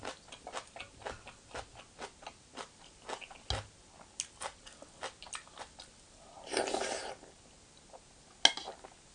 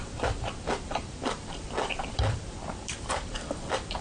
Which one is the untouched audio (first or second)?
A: first